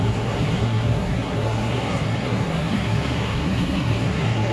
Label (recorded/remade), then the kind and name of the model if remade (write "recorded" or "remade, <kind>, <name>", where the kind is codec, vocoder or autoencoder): remade, codec, SNAC